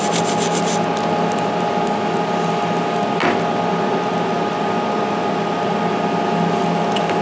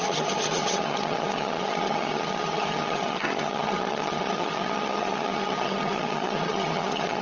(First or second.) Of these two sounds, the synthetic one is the second